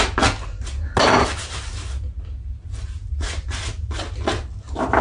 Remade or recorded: recorded